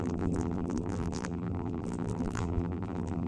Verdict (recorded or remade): remade